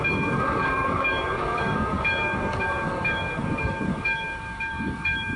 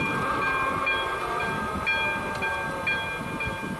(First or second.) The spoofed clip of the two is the first